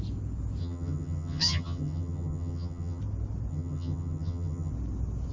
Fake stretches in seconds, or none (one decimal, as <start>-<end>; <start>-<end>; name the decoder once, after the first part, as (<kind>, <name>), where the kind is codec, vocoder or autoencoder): 0.6-3.0 (vocoder, HiFi-GAN); 3.5-4.7